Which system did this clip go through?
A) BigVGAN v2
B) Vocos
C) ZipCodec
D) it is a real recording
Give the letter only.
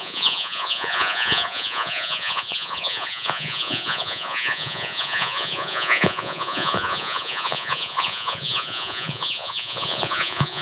B